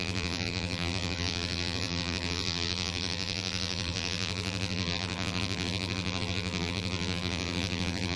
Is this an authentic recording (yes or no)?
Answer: no